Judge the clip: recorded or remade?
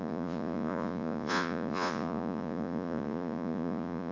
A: remade